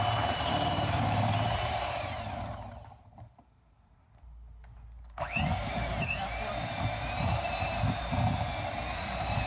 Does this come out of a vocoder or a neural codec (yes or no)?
yes